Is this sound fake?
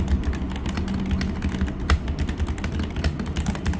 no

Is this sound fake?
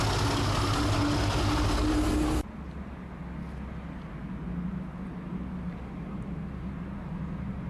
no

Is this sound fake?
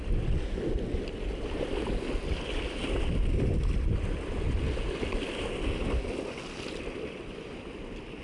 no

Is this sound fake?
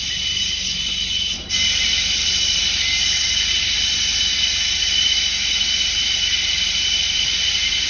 no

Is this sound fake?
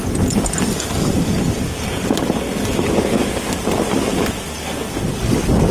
no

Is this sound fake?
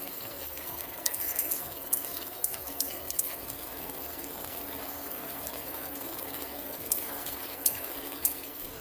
yes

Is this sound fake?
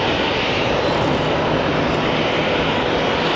no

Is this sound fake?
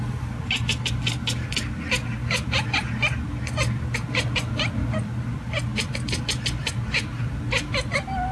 no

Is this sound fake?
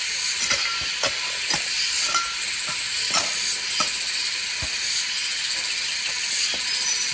no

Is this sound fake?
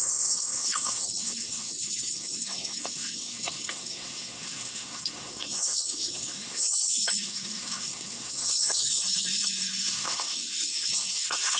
yes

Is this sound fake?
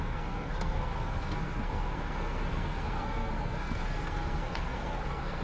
yes